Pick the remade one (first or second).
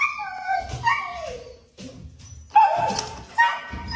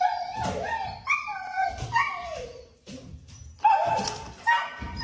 second